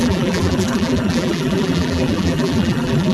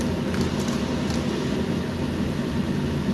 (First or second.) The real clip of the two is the second